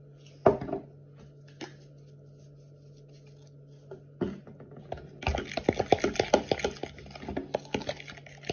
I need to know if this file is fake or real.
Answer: real